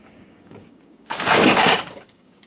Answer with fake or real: fake